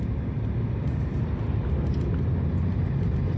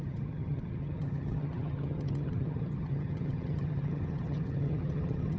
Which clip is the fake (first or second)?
second